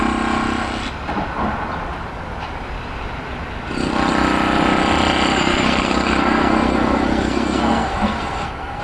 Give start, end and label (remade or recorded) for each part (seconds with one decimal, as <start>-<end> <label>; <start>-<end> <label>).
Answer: 0.0-5.3 recorded; 5.3-8.8 remade